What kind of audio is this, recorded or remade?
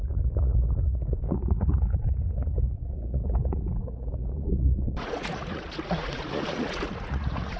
remade